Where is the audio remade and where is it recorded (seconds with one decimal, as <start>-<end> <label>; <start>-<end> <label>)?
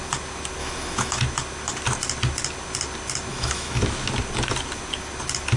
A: 0.0-0.6 recorded; 0.6-1.2 remade; 1.2-3.3 recorded; 3.3-3.8 remade; 3.8-5.6 recorded